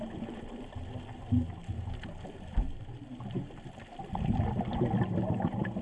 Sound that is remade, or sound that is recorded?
recorded